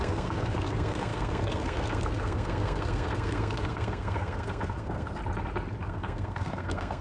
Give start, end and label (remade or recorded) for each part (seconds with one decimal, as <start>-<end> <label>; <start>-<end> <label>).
0.0-5.2 remade; 5.2-5.8 recorded; 5.8-7.0 remade